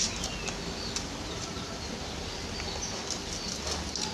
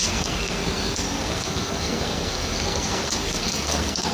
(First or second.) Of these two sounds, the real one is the first